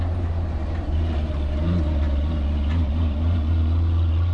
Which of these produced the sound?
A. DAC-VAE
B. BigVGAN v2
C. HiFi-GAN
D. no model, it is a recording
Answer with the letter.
D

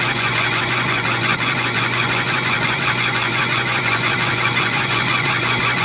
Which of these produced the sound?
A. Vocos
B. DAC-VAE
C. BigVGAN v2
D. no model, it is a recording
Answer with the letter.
A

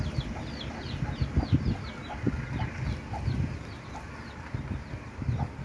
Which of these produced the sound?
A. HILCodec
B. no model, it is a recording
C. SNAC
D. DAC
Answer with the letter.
B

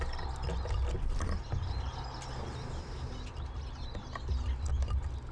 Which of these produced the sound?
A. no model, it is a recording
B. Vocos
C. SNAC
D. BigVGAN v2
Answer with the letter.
A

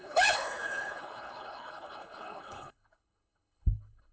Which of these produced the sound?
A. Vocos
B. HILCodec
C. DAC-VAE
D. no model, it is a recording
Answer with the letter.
B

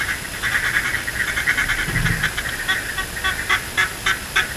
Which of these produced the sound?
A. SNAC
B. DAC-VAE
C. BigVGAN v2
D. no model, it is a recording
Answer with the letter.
D